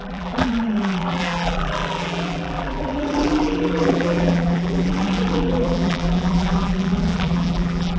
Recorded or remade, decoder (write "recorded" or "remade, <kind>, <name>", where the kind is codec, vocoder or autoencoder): remade, vocoder, BigVGAN v2